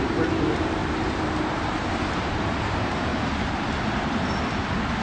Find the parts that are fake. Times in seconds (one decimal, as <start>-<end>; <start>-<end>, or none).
0.0-0.8; 1.4-3.1